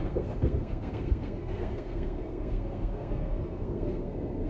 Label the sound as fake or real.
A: fake